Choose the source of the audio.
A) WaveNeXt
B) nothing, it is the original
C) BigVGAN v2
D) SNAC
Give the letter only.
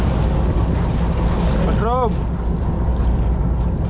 B